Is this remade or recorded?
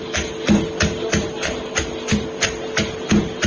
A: recorded